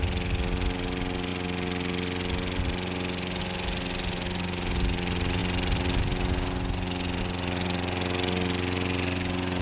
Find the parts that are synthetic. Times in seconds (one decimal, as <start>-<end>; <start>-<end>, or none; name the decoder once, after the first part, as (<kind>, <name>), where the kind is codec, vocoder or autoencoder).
none